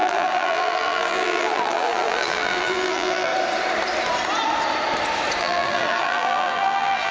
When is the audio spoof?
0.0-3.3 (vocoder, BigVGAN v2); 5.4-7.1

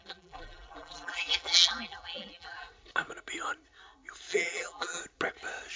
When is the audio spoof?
0.0-2.7 (vocoder, BigVGAN v2); 4.3-5.0

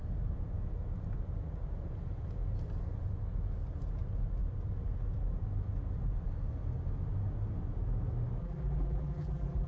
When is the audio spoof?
8.4-9.7 (vocoder, BigVGAN v2)

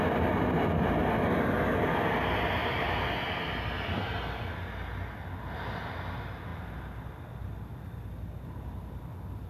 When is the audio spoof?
6.5-7.4 (vocoder, BigVGAN v2)

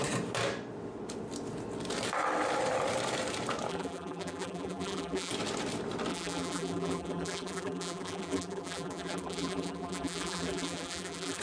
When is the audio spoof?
3.7-5.3 (vocoder, BigVGAN v2); 6.1-11.4

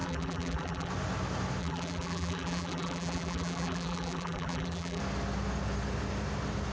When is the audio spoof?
0.0-0.9 (vocoder, BigVGAN v2); 1.6-5.0

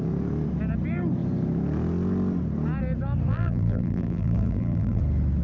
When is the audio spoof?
3.3-5.0 (vocoder, BigVGAN v2)

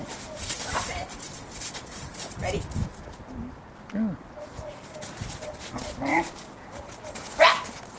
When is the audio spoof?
6.1-6.9 (vocoder, BigVGAN v2)